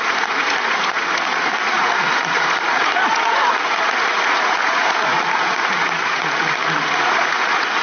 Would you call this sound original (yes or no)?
no